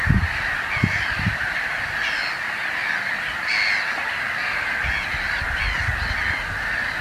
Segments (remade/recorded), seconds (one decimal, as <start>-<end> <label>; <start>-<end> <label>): 0.0-7.0 recorded